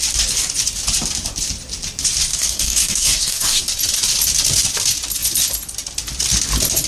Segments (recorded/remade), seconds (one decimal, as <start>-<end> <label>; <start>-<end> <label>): 0.0-2.3 recorded; 2.3-3.6 remade; 3.6-6.9 recorded